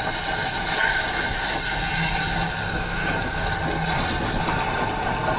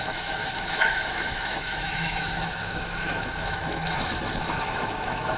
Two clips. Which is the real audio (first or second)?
first